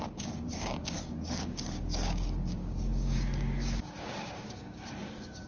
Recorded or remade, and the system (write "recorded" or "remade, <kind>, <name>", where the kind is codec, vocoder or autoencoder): remade, codec, DAC